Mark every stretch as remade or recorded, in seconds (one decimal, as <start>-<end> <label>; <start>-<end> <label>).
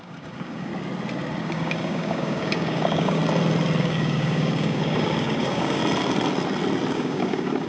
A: 0.0-0.7 remade; 0.7-1.4 recorded; 1.4-3.2 remade; 3.2-3.8 recorded; 3.8-5.8 remade; 5.8-6.9 recorded; 6.9-7.7 remade